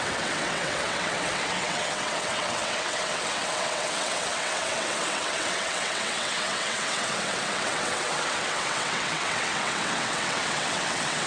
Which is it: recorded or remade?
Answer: remade